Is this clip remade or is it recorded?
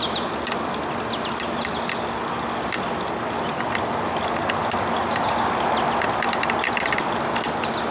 recorded